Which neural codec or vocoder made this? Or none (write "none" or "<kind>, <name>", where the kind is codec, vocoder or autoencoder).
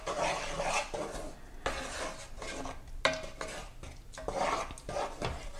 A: none